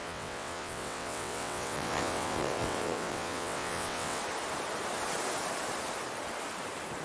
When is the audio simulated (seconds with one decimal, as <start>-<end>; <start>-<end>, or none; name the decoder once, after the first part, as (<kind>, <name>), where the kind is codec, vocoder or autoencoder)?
0.0-4.2 (vocoder, WaveNeXt)